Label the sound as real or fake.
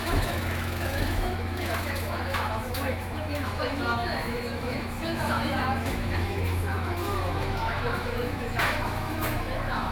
fake